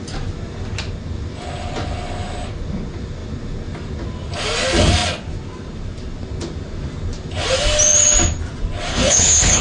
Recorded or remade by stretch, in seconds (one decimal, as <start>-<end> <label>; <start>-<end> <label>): 0.0-8.9 recorded; 8.9-9.6 remade